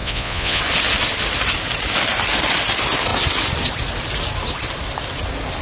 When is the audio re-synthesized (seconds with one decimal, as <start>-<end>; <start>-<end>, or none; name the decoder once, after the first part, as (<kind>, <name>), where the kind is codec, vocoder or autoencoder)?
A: 0.0-0.6 (vocoder, Vocos)